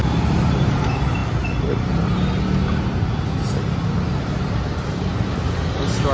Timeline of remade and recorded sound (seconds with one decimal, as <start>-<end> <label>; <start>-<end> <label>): 0.0-6.1 recorded